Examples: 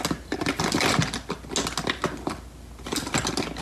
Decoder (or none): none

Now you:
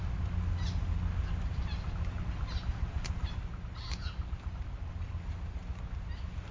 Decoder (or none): none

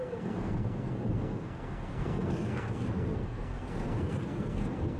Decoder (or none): codec, SNAC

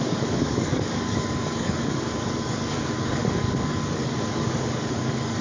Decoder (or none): codec, DAC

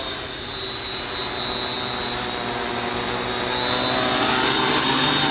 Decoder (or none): none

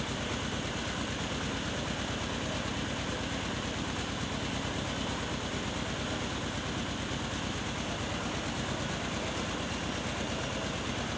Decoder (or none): none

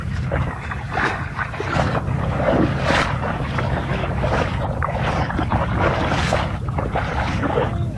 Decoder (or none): codec, DAC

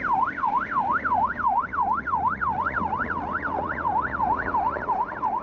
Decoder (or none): vocoder, Vocos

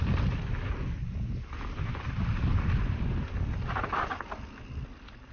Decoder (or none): none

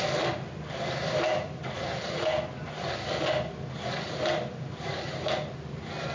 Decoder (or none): none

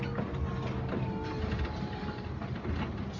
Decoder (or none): none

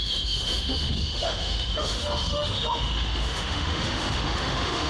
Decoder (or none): autoencoder, DAC-VAE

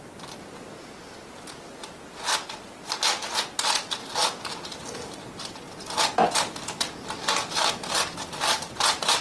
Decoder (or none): none